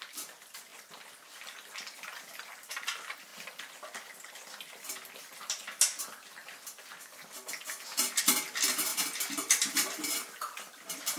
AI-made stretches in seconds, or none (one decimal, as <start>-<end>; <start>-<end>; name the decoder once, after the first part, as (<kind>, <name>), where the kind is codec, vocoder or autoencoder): none